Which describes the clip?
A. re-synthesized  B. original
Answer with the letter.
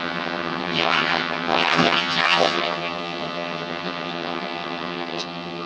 A